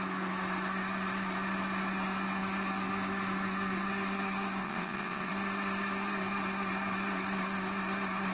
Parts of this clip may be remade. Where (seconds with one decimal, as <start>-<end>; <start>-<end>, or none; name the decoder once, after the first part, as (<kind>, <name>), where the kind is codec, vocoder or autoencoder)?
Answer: 4.6-5.3 (vocoder, WaveNeXt)